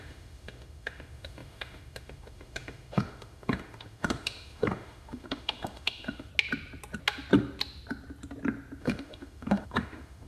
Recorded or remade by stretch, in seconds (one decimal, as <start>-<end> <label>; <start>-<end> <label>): 0.0-6.3 remade; 6.3-8.8 recorded; 8.8-10.3 remade